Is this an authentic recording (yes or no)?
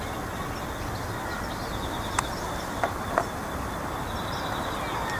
yes